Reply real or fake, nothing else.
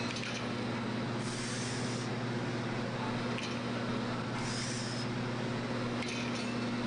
real